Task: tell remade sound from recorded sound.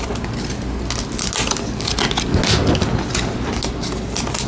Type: recorded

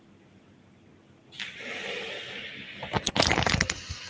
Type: recorded